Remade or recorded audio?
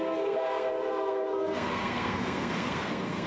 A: remade